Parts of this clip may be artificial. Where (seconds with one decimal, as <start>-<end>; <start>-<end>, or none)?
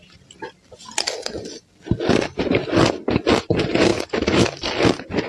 0.0-2.8; 3.9-4.6